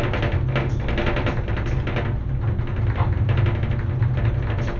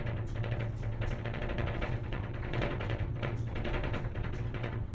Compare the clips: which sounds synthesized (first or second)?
second